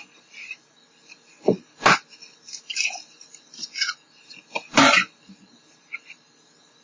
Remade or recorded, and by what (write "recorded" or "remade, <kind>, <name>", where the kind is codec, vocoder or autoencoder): remade, vocoder, BigVGAN v2